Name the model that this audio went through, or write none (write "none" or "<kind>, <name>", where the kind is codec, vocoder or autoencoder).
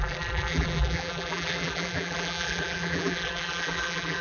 vocoder, BigVGAN v2